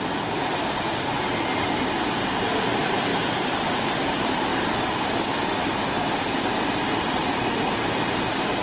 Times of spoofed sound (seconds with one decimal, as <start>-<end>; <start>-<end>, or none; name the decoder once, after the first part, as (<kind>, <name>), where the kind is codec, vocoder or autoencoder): 0.0-8.6 (vocoder, BigVGAN v2)